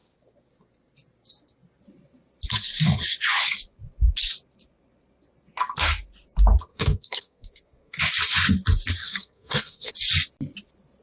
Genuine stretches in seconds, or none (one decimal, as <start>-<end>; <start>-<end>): 0.0-6.7; 8.0-9.0; 9.9-11.0